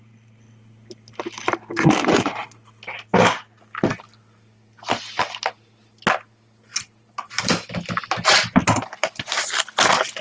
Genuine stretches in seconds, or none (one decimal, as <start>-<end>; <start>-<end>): 0.0-10.2